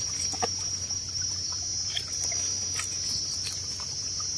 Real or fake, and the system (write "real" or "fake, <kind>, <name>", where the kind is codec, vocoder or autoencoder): real